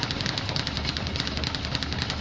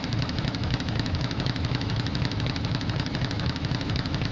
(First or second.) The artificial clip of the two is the second